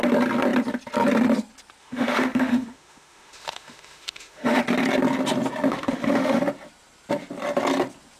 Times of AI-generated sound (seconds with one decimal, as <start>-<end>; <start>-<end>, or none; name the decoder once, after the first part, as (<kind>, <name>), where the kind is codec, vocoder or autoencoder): 1.8-4.6 (autoencoder, DAC-VAE); 5.7-6.4